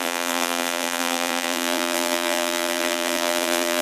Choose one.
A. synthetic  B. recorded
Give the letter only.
A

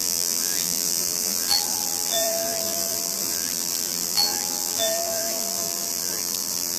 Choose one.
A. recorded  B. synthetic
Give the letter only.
B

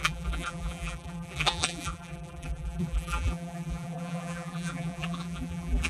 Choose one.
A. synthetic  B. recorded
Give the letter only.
A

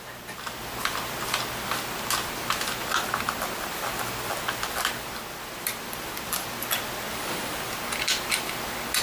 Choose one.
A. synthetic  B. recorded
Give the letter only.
B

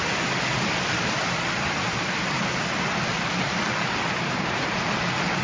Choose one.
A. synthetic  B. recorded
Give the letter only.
B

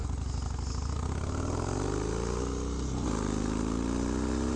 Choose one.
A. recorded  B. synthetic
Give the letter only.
A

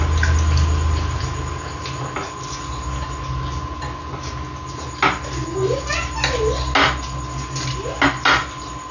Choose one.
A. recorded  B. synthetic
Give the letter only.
A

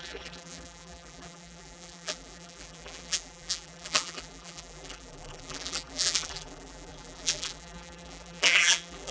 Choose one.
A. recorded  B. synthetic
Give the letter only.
B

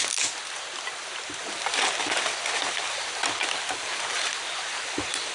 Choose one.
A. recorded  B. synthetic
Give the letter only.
A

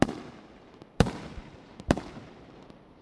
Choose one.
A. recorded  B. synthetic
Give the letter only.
B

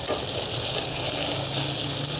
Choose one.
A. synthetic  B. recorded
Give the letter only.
B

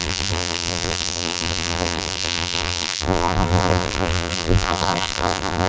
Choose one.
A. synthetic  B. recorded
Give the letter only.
A